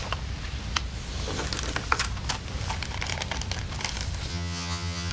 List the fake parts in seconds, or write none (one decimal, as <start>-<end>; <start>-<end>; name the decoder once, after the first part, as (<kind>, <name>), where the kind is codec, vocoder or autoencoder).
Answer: 4.3-5.1 (vocoder, HiFi-GAN)